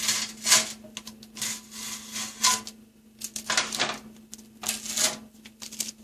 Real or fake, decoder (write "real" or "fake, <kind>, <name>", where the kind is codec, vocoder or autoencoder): real